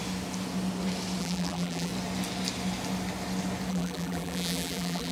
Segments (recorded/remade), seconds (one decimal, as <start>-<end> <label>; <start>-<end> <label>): 0.0-1.2 recorded; 1.2-1.9 remade; 1.9-3.7 recorded; 3.7-5.1 remade